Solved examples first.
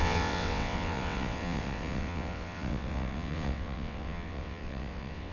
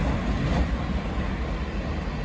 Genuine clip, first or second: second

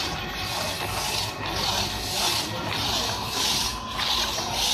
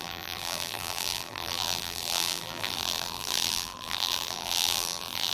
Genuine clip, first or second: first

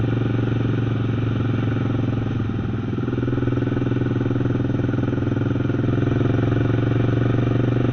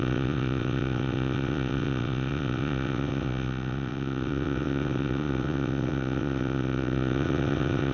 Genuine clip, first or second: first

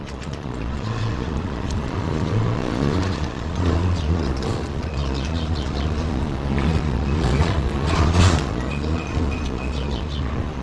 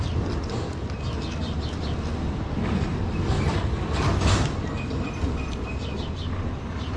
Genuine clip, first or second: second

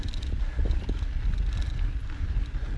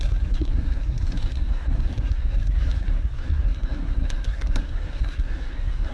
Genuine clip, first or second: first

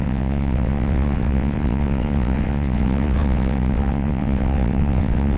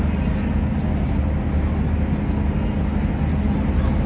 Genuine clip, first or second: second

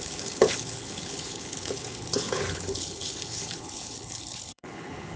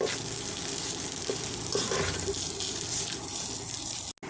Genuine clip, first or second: second